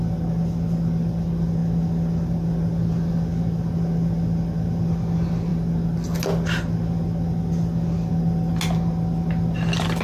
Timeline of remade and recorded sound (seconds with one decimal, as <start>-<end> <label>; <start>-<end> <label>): 0.0-10.0 recorded